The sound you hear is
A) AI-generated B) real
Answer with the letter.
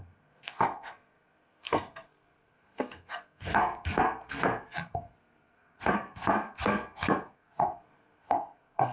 A